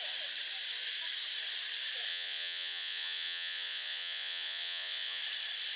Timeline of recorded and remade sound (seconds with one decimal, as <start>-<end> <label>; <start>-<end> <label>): 0.0-2.1 recorded; 2.1-5.2 remade; 5.2-5.8 recorded